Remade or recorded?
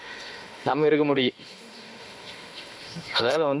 remade